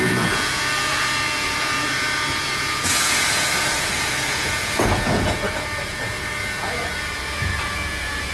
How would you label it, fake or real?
fake